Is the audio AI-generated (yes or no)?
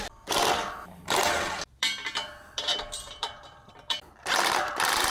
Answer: yes